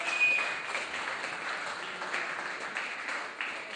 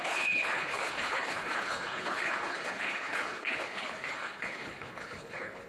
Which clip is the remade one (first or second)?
second